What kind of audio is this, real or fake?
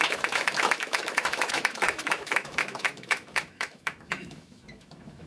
fake